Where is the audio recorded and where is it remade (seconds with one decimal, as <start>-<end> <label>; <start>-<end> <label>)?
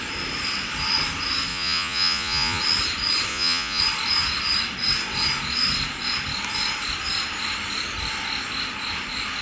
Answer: 0.0-1.5 recorded; 1.5-2.6 remade; 2.6-3.3 recorded; 3.3-3.8 remade; 3.8-9.4 recorded